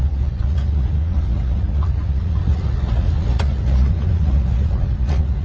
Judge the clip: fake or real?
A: fake